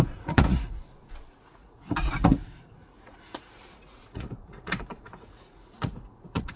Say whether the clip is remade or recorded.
remade